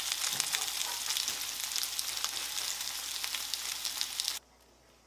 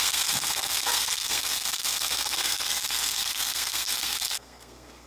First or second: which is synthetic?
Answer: second